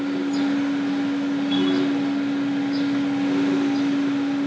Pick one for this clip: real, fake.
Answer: real